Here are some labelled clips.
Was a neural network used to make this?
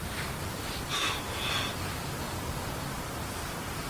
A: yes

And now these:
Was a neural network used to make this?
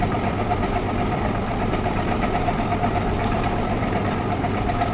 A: yes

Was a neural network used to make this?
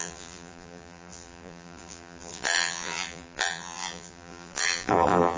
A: yes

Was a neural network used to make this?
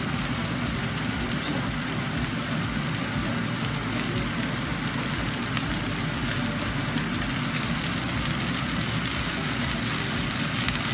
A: no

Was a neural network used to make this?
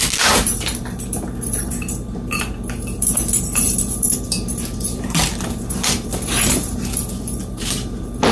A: yes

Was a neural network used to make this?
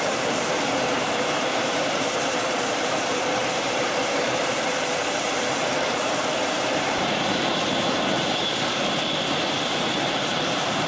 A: yes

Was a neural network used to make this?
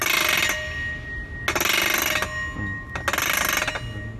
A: no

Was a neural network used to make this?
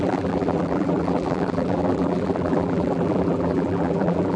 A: yes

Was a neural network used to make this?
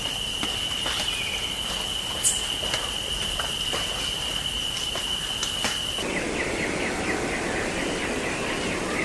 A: no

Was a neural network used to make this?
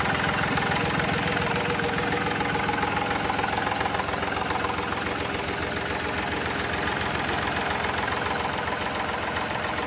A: no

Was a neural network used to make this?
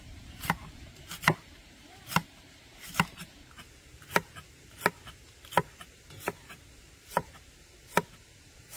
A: yes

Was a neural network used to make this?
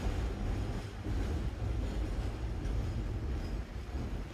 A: no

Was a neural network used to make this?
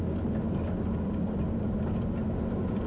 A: no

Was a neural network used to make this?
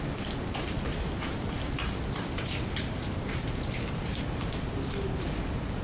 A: yes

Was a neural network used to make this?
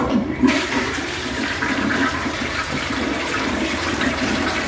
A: yes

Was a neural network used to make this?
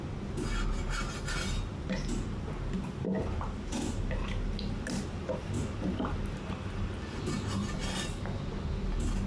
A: no